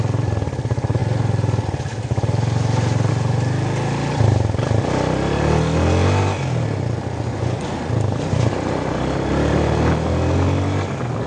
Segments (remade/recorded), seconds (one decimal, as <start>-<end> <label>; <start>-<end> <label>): 0.0-7.3 recorded; 7.3-7.9 remade; 7.9-11.3 recorded